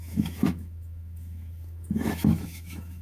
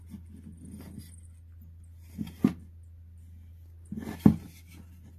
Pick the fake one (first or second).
first